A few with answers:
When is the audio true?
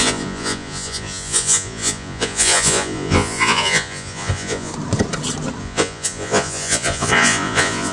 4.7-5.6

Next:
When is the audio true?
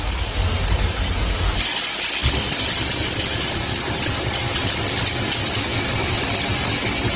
0.0-7.2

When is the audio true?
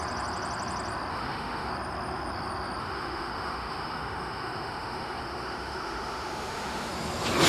0.0-1.1; 1.7-2.8; 6.9-7.5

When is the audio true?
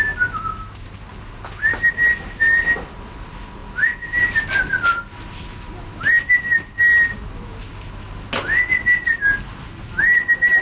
0.0-10.6